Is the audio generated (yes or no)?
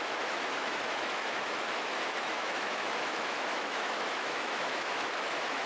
yes